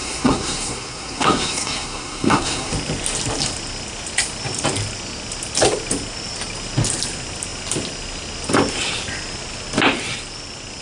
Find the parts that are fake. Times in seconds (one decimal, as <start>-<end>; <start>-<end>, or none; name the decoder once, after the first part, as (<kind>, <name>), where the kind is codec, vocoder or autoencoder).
0.0-2.7 (codec, SNAC)